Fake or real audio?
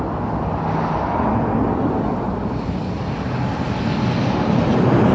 real